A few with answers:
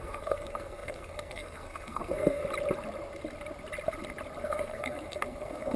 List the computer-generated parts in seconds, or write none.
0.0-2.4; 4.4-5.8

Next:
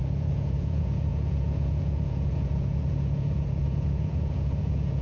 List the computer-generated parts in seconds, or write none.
0.0-5.0

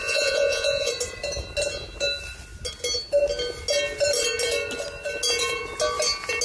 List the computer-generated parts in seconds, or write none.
0.0-0.9

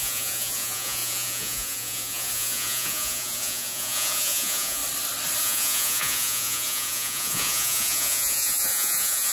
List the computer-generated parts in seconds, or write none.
0.0-4.8; 5.4-9.3

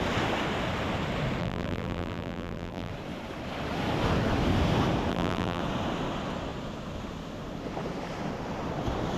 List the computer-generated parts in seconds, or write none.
1.4-2.9; 5.1-5.6

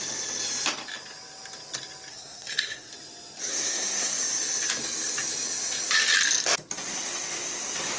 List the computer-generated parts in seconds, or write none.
2.1-2.9; 3.5-4.2

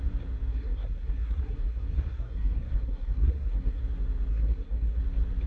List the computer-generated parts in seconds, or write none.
0.5-3.8; 4.3-5.0